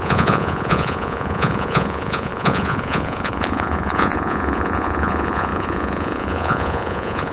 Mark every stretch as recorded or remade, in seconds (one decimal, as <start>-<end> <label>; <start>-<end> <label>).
0.0-7.3 remade